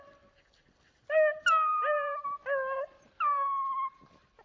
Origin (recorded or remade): recorded